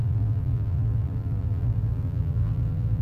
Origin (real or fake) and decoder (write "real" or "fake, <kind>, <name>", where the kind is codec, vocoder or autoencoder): fake, vocoder, BigVGAN v2